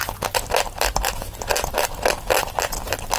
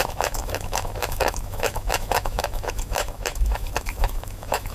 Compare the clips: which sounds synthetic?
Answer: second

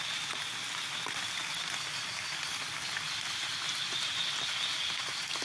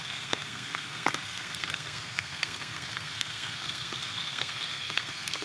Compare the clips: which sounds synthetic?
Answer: second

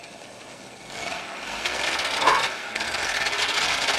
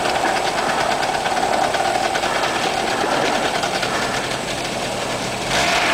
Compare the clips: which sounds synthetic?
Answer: first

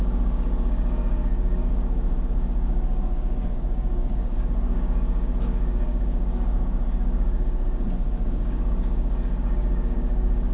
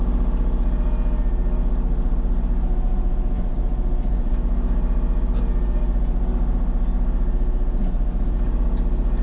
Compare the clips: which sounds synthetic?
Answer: first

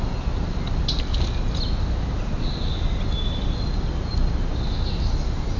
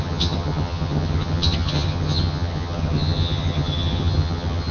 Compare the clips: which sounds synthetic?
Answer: second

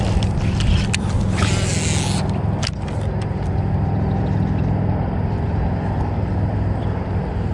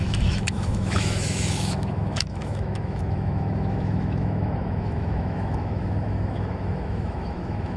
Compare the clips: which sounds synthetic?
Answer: second